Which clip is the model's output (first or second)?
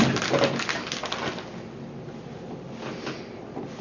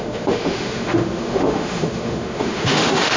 second